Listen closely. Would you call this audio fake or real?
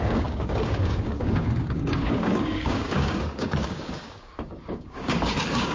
fake